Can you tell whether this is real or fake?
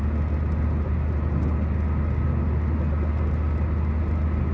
real